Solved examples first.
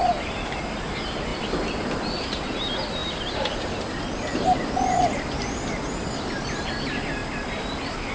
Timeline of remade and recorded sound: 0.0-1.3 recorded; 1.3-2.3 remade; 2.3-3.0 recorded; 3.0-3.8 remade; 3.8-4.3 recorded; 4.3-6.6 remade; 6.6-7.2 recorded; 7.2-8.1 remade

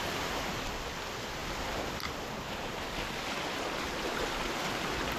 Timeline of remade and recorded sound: 0.0-5.2 recorded

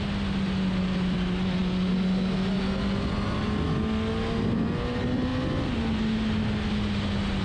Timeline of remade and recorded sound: 0.0-7.4 recorded

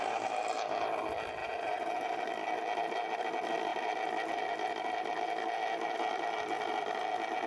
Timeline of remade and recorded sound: 0.0-1.4 recorded; 1.4-2.1 remade; 2.1-7.5 recorded

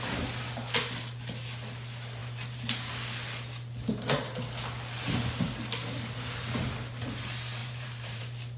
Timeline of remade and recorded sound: 0.0-2.2 recorded; 2.2-2.7 remade; 2.7-7.6 recorded; 7.6-8.2 remade; 8.2-8.6 recorded